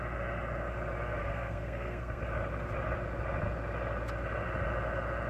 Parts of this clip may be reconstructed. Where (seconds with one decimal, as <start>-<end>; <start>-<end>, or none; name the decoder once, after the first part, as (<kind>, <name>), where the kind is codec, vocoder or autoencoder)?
1.2-2.2 (codec, SNAC)